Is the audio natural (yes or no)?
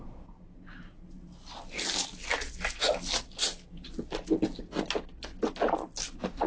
yes